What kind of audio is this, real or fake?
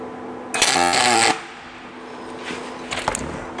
real